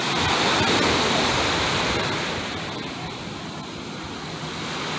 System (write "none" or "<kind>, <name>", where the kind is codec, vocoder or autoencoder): none